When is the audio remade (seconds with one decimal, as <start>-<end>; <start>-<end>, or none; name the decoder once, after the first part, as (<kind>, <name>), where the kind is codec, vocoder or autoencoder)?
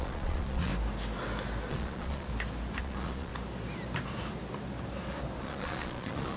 0.0-0.7 (vocoder, Vocos); 1.7-2.3; 2.8-3.3; 5.4-6.4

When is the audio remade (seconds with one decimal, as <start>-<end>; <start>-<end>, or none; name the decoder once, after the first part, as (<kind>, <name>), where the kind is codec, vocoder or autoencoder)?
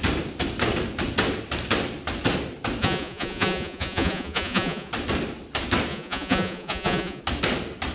2.8-4.9 (vocoder, Vocos); 5.9-7.2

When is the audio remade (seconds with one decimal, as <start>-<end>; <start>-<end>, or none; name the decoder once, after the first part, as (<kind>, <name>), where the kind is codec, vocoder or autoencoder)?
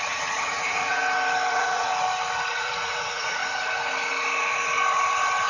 0.0-1.0 (vocoder, Vocos); 1.5-1.9; 2.5-3.4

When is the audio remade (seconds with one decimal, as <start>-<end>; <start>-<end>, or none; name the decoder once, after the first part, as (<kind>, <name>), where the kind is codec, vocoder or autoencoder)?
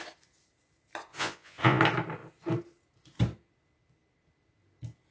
1.1-1.8 (vocoder, Vocos)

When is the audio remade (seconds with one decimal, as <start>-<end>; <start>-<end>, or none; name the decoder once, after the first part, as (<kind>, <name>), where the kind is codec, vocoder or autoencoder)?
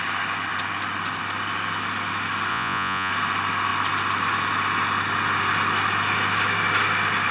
2.5-3.1 (vocoder, Vocos)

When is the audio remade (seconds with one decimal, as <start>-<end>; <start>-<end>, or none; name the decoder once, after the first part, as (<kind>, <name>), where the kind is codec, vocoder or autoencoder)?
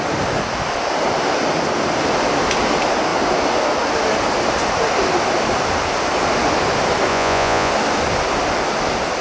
7.1-7.7 (vocoder, Vocos)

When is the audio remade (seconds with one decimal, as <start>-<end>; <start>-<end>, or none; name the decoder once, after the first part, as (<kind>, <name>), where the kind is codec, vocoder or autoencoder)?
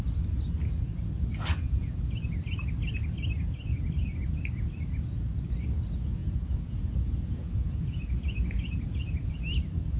1.5-2.1 (vocoder, Vocos); 6.2-9.3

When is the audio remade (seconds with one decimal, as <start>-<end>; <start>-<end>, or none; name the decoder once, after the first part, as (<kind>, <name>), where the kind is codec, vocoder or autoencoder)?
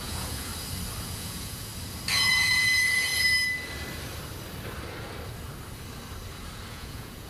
0.0-0.5 (vocoder, Vocos); 1.0-1.7; 2.3-3.1; 6.7-7.3